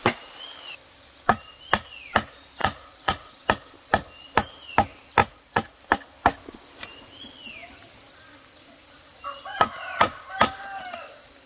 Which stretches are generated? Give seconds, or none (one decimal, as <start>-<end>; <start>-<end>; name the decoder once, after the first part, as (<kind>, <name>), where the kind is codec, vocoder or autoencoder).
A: 2.6-3.3 (vocoder, Vocos); 5.2-5.8